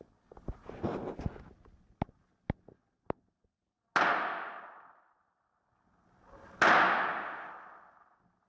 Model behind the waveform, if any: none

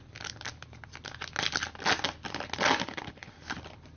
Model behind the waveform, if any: none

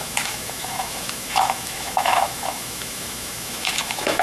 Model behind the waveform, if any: autoencoder, DAC-VAE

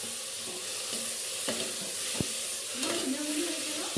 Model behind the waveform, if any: none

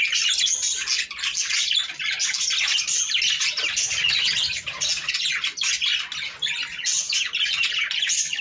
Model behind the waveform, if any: none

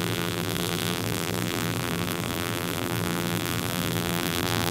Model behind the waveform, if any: vocoder, BigVGAN v2